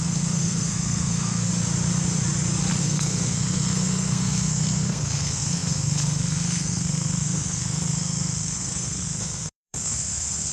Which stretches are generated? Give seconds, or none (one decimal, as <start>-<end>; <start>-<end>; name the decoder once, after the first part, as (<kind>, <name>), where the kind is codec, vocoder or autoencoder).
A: 0.0-1.5 (codec, SNAC); 2.8-10.5